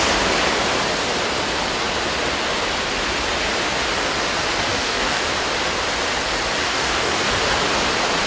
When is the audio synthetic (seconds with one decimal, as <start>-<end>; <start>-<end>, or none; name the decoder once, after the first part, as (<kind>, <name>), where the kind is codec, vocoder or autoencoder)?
4.7-5.2 (codec, DAC); 6.6-7.3